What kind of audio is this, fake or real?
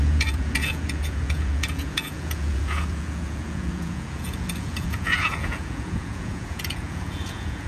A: fake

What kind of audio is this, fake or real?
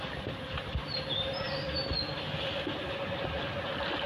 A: real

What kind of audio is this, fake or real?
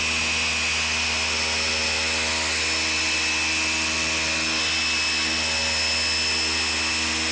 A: real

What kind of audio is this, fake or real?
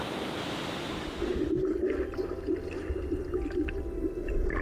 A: real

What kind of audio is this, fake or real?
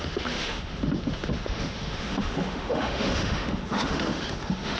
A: fake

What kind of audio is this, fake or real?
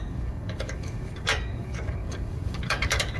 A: fake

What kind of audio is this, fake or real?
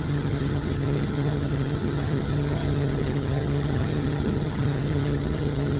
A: fake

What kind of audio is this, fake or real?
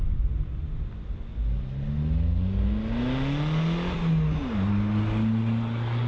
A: real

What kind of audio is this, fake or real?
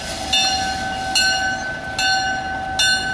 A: real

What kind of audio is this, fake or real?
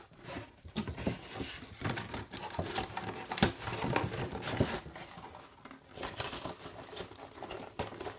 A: real